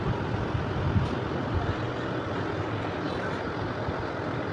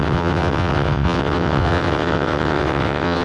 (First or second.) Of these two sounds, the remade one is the second